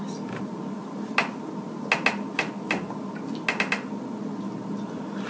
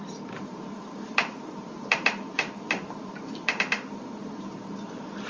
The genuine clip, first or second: first